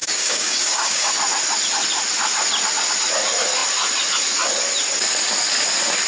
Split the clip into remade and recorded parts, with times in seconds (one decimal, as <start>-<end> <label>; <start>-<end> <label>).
0.0-1.1 remade; 1.1-6.1 recorded